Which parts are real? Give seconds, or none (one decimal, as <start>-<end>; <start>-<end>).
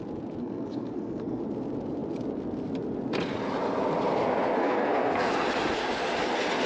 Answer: 0.0-0.4; 1.4-4.6; 5.3-6.7